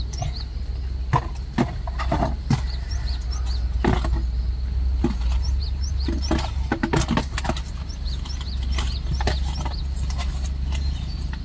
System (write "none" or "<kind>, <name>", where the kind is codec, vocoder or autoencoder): none